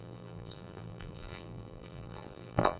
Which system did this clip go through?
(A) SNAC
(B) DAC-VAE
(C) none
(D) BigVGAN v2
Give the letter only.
D